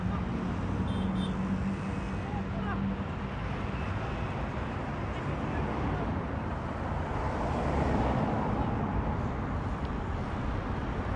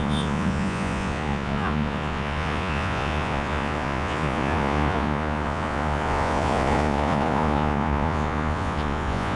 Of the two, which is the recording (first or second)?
first